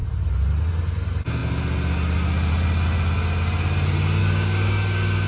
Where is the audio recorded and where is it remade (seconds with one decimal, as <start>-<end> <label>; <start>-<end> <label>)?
0.0-4.2 recorded; 4.2-5.3 remade